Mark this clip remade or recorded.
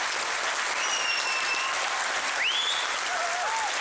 recorded